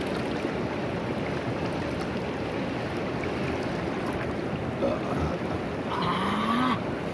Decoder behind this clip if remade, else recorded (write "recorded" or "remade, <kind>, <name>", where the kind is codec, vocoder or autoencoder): recorded